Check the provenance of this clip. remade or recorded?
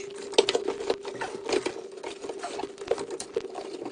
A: recorded